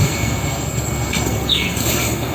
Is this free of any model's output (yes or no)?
no